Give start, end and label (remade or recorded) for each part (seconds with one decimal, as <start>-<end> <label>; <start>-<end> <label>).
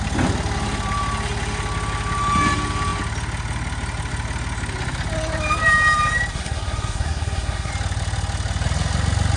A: 0.0-6.3 recorded; 6.3-7.7 remade; 7.7-9.4 recorded